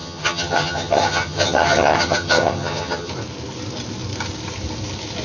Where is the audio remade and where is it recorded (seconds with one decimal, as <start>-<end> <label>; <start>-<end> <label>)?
0.0-3.1 remade; 3.1-5.2 recorded